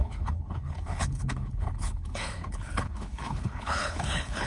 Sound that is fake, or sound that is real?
fake